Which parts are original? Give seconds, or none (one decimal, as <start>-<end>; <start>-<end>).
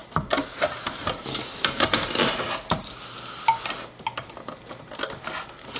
0.0-1.0; 2.9-5.8